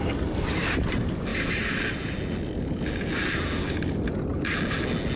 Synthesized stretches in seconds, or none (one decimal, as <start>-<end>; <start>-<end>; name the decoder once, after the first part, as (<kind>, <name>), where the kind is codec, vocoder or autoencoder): none